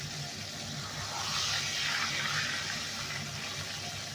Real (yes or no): yes